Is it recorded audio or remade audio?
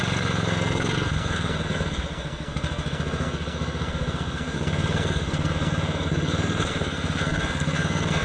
remade